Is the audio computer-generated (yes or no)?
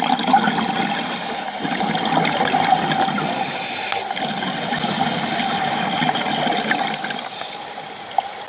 no